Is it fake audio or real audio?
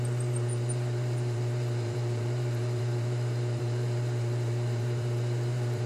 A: fake